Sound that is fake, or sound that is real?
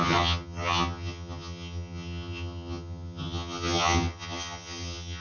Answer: fake